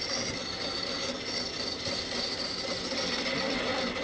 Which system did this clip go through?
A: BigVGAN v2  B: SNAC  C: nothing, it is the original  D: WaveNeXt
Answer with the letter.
C